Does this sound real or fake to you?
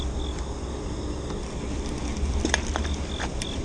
real